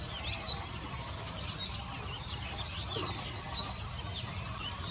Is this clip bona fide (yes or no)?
yes